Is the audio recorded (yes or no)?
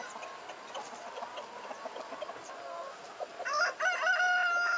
yes